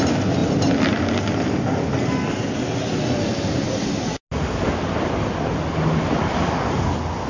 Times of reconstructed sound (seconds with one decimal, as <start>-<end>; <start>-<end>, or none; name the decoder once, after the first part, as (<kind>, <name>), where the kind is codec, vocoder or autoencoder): none